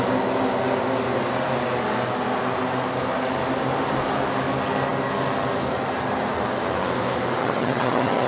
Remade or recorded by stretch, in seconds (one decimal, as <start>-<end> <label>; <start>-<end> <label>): 0.0-7.4 recorded; 7.4-8.3 remade